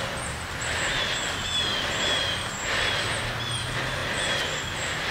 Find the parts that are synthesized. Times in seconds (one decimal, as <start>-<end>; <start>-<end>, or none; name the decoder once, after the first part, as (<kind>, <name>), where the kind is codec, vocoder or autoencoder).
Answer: none